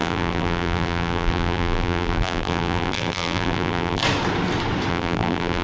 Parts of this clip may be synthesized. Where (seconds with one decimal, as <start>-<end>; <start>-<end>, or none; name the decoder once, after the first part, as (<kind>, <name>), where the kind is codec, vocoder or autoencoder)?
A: 0.0-4.0 (vocoder, BigVGAN v2); 4.9-5.6